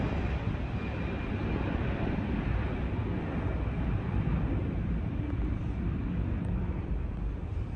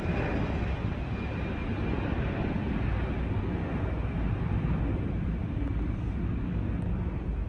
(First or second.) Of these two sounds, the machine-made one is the first